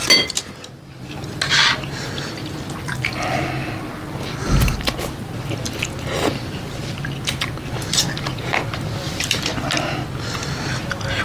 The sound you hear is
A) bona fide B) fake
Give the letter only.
A